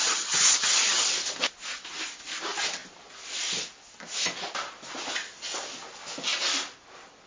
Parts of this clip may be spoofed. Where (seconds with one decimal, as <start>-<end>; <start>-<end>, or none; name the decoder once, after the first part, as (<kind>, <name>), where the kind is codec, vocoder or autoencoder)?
0.0-1.0 (vocoder, HiFi-GAN)